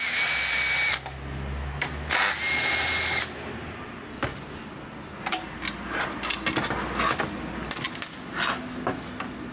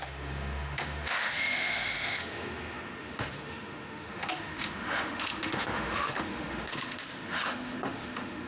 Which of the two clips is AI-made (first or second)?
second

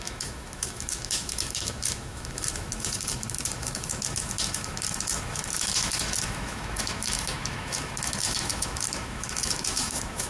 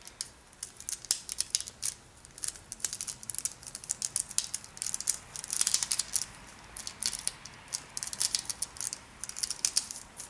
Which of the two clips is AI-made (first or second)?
first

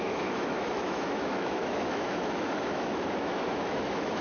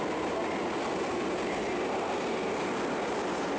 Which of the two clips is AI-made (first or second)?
first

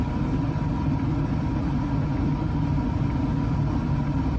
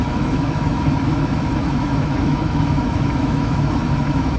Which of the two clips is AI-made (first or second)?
second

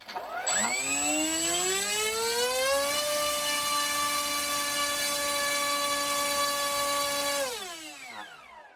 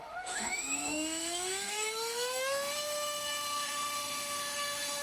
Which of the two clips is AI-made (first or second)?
second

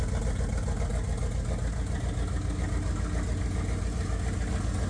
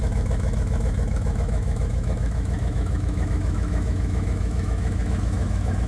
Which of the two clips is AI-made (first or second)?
second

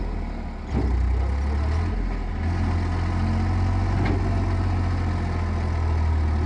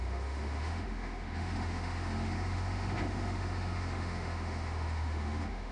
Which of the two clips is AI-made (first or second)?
second